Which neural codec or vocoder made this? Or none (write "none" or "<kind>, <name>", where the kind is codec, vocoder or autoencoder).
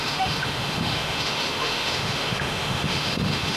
autoencoder, DAC-VAE